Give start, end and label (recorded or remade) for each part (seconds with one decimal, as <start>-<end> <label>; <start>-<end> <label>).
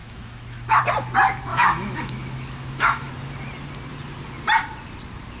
0.0-0.8 remade; 0.8-1.5 recorded; 1.5-3.1 remade; 3.1-5.4 recorded